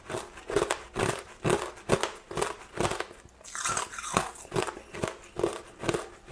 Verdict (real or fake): real